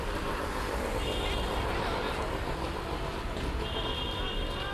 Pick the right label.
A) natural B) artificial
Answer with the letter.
A